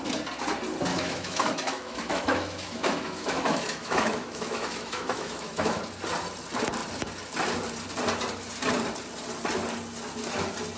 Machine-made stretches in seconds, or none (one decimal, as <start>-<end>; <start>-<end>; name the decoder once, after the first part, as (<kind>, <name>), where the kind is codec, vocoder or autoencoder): 0.9-5.8 (autoencoder, DAC-VAE)